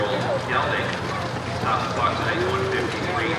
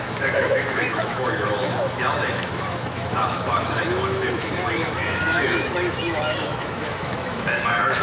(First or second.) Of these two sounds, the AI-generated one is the second